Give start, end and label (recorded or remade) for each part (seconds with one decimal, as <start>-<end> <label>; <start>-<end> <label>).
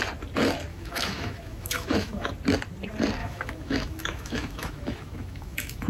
0.0-0.7 recorded; 0.7-2.3 remade; 2.3-3.2 recorded; 3.2-5.9 remade